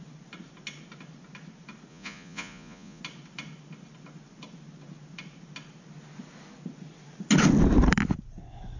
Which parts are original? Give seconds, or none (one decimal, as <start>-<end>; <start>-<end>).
0.0-1.9; 3.0-8.8